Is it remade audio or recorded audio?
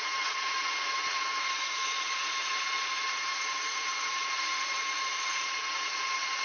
remade